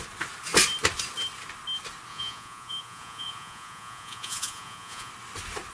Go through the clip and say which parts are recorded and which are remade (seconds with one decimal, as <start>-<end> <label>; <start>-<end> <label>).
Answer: 0.0-2.1 recorded; 2.1-5.1 remade; 5.1-5.7 recorded